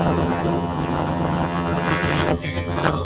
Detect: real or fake fake